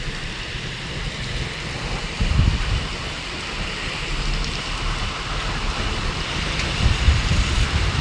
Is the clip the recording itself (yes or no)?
no